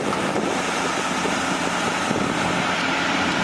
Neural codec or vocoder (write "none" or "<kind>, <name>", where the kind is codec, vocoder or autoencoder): vocoder, BigVGAN v2